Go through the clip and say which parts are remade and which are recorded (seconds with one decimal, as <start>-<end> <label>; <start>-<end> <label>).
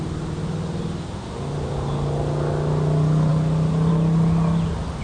0.0-5.0 recorded